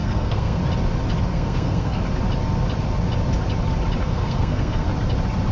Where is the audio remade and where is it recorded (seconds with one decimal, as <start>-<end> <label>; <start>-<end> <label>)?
0.0-0.6 remade; 0.6-1.3 recorded; 1.3-2.0 remade; 2.0-4.0 recorded; 4.0-4.9 remade; 4.9-5.5 recorded